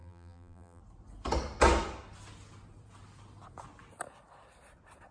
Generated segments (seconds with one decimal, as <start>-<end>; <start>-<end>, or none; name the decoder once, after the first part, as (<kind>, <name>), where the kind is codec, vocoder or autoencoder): 0.0-0.8 (vocoder, BigVGAN v2)